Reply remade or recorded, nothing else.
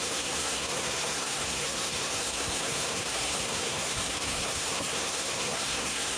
remade